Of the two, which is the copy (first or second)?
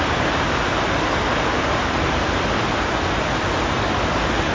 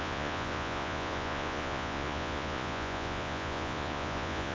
second